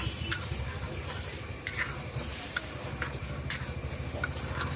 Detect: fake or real fake